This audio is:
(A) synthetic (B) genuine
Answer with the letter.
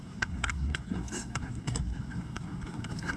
A